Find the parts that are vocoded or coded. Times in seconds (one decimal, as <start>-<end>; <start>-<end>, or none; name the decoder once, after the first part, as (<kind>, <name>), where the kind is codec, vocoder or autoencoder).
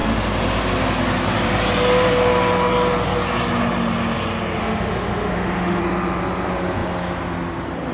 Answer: 4.6-5.8 (autoencoder, DAC-VAE)